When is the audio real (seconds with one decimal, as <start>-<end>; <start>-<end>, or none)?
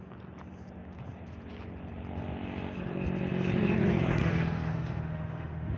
0.0-4.2